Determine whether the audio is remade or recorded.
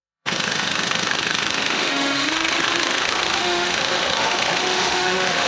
remade